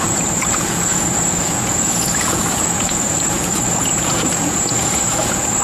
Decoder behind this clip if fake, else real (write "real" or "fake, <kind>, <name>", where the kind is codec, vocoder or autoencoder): fake, vocoder, Vocos